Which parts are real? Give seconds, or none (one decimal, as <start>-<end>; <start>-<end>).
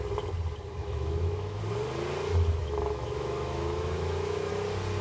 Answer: 0.0-0.8; 1.6-2.6; 4.5-5.0